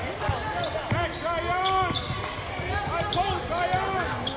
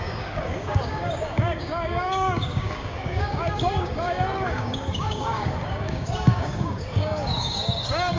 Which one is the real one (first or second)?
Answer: first